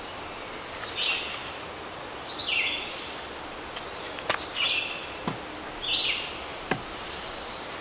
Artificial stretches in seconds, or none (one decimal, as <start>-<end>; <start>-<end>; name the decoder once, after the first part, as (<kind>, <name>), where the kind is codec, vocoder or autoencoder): 6.5-7.8 (vocoder, BigVGAN v2)